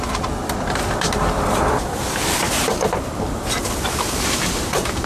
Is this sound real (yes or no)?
no